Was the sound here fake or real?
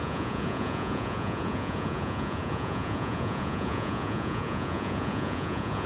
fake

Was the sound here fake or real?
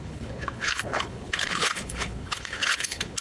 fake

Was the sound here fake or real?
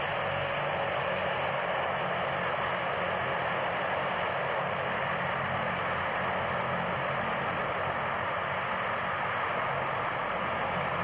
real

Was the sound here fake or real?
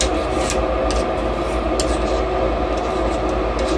real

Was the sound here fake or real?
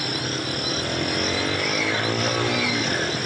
real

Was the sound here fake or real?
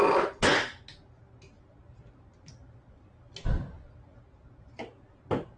real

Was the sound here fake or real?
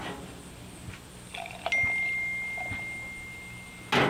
real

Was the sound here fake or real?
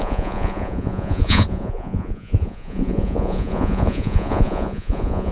fake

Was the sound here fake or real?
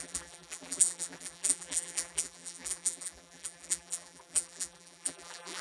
fake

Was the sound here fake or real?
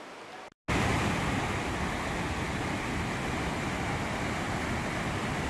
real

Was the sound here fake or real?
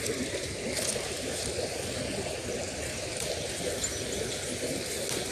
real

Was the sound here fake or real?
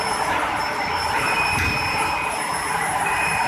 fake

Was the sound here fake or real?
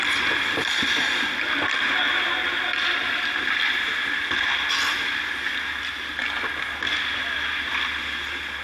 real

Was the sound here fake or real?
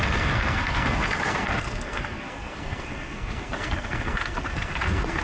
fake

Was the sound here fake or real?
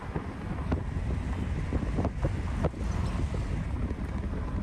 real